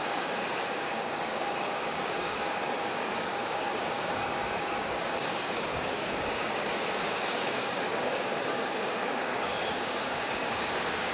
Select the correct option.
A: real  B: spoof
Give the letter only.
B